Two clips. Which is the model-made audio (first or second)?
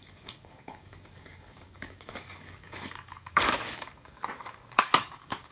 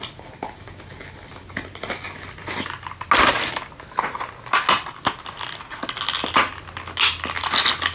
first